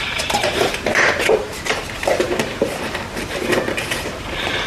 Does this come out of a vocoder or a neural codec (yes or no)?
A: yes